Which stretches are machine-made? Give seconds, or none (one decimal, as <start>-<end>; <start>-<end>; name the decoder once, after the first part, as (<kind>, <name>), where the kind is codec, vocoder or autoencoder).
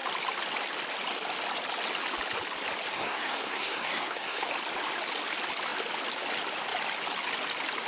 2.9-4.5 (codec, SNAC)